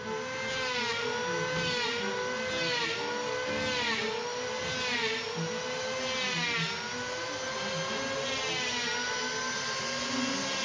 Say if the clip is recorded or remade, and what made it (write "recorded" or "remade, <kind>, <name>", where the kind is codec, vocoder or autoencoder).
recorded